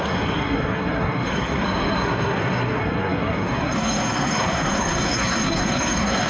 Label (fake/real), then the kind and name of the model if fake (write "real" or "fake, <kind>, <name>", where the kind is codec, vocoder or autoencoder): fake, codec, SNAC